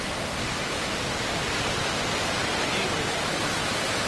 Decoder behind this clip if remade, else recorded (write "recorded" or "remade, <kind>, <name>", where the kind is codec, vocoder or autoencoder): remade, vocoder, BigVGAN v2